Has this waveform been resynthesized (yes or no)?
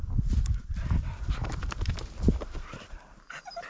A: no